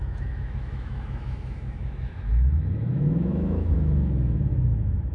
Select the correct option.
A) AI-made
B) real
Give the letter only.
A